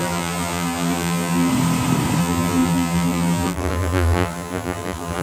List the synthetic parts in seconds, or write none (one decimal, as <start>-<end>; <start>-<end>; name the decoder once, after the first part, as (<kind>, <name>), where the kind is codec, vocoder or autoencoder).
0.0-1.5 (vocoder, BigVGAN v2); 2.2-5.2